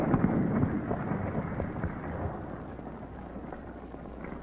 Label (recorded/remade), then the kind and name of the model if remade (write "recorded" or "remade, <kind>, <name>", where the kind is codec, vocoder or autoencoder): recorded